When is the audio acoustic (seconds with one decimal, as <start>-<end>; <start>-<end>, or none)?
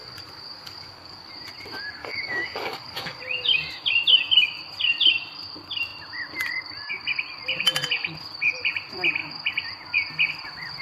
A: 1.3-2.0; 3.2-10.8